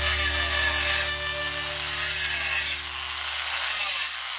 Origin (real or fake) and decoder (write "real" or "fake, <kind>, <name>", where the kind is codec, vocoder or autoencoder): real